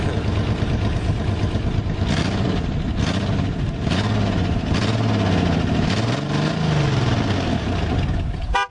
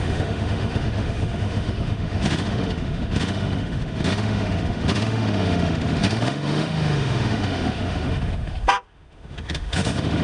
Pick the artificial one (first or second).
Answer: second